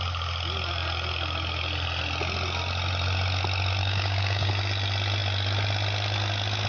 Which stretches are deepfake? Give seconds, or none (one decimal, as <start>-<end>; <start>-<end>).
3.8-4.5